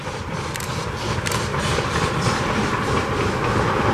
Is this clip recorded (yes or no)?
no